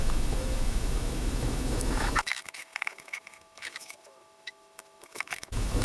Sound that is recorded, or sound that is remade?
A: remade